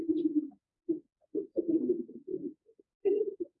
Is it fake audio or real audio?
fake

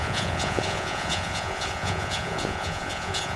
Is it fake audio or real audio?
fake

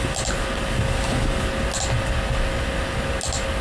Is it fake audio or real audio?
real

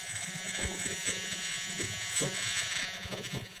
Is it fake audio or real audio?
fake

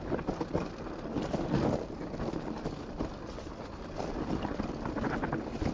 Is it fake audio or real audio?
real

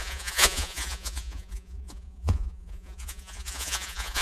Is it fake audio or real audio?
fake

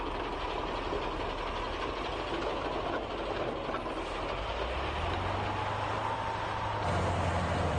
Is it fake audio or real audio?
real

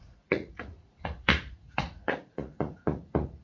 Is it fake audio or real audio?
fake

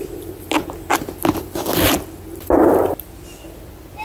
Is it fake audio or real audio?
real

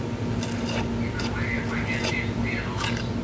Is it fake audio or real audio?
real